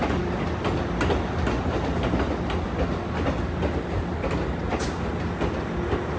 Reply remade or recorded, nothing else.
recorded